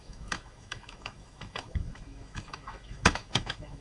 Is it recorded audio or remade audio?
remade